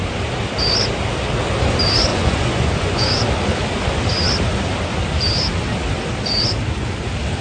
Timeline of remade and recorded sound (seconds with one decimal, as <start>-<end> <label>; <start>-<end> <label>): 0.0-2.1 recorded; 2.1-3.2 remade; 3.2-7.4 recorded